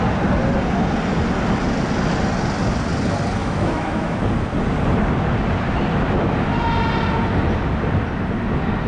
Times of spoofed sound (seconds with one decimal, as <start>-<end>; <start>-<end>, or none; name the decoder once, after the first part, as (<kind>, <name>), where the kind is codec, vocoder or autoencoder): 3.4-4.2 (autoencoder, DAC-VAE)